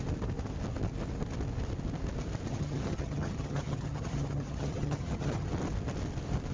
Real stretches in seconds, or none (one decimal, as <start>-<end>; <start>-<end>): 0.0-2.5; 5.5-6.5

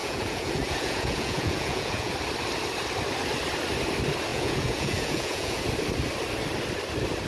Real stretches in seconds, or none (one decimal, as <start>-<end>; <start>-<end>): 2.1-4.3; 5.6-7.3